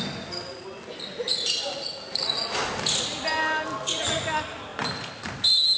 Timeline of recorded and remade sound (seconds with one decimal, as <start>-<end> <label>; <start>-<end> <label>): 0.0-5.8 recorded